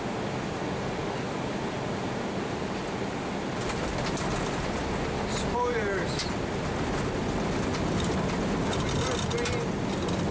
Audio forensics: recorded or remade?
recorded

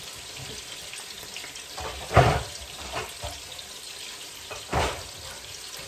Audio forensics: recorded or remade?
remade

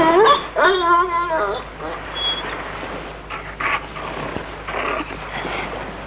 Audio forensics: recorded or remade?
recorded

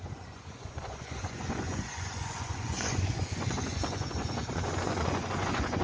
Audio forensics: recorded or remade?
remade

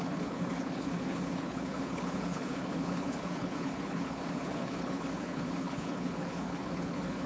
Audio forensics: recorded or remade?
remade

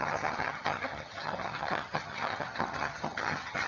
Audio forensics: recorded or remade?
remade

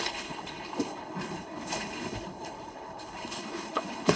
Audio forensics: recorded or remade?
remade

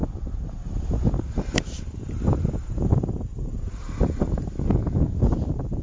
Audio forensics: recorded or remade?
recorded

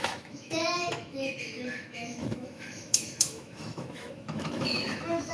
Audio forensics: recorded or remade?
remade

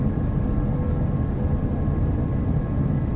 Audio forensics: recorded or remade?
recorded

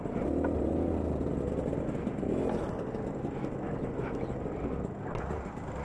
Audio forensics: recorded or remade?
recorded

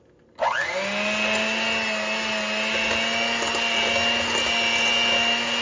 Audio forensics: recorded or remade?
recorded